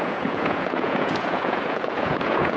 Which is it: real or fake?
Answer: fake